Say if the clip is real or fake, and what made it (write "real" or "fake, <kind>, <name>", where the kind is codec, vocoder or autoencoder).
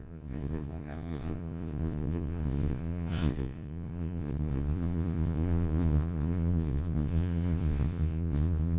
fake, vocoder, Vocos